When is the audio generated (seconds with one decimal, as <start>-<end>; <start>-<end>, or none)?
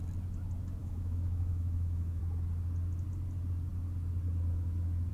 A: 0.8-2.2